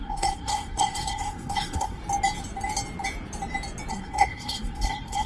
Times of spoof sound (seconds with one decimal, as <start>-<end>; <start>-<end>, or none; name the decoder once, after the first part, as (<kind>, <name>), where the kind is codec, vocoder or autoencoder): 0.0-2.0 (codec, SNAC); 3.9-5.3